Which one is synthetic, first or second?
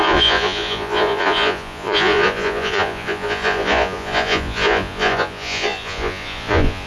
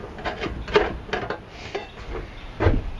first